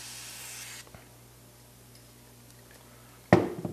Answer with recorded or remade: recorded